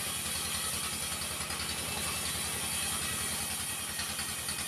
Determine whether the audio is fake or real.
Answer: real